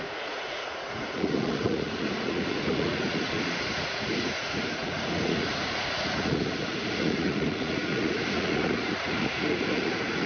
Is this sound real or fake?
fake